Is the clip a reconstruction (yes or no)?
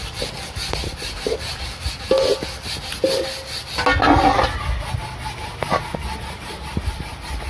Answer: no